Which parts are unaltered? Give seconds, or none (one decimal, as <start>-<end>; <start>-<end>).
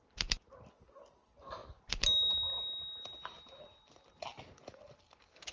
0.0-5.5